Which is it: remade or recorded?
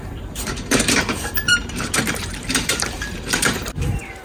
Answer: remade